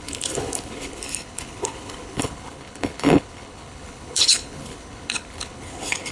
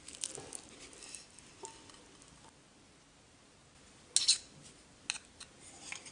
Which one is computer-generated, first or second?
first